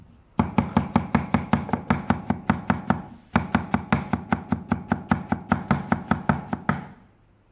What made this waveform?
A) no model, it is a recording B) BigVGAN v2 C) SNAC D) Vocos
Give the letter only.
A